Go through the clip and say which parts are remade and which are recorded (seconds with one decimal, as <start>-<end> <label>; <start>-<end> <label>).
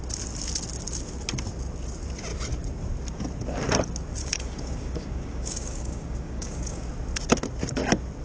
0.0-4.2 recorded; 4.2-6.9 remade; 6.9-8.2 recorded